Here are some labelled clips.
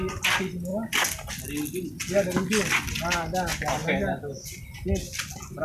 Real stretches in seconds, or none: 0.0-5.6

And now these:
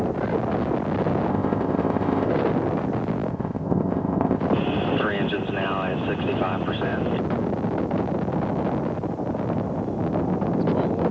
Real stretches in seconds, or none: 0.0-1.3; 2.3-3.3; 4.4-11.1